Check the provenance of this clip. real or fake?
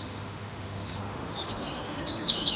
fake